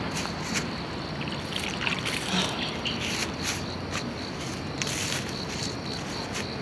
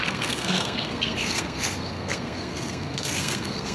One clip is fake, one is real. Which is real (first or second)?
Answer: first